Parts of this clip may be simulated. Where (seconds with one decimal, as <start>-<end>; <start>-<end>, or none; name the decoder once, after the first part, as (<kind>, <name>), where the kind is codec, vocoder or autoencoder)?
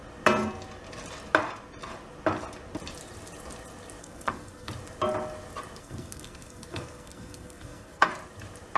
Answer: 4.0-4.7 (codec, SNAC); 5.8-8.1